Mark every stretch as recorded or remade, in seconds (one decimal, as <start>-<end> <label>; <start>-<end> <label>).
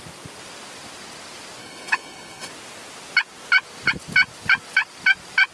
0.0-1.6 recorded; 1.6-2.5 remade; 2.5-5.5 recorded